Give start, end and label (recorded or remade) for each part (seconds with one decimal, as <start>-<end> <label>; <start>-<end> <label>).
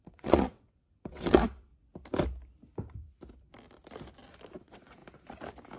0.0-1.7 remade; 1.7-4.6 recorded; 4.6-5.0 remade; 5.0-5.8 recorded